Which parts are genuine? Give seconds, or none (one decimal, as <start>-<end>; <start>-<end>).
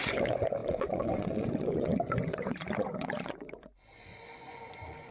none